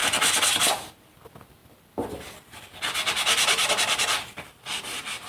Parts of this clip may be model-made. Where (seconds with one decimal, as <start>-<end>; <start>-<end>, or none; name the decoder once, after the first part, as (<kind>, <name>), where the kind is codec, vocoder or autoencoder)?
0.0-0.5 (vocoder, BigVGAN v2); 3.6-4.8